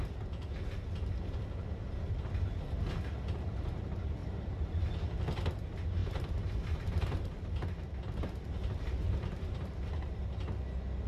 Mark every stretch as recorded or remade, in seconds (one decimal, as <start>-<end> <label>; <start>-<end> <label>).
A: 0.0-4.2 recorded; 4.2-4.9 remade; 4.9-6.0 recorded; 6.0-6.5 remade; 6.5-11.1 recorded

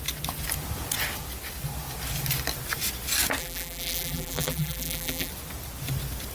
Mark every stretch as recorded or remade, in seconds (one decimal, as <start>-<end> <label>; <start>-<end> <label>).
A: 0.0-3.4 recorded; 3.4-5.3 remade; 5.3-6.3 recorded

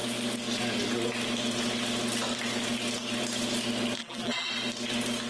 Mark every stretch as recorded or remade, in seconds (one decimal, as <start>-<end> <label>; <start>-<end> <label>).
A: 0.0-4.0 recorded; 4.0-4.5 remade; 4.5-5.3 recorded

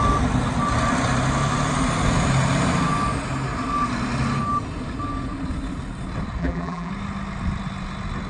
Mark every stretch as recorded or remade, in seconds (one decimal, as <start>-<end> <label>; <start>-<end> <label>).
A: 0.0-6.4 recorded; 6.4-6.9 remade; 6.9-8.3 recorded